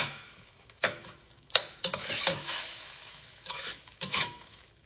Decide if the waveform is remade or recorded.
remade